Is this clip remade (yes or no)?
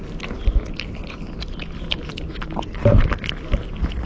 no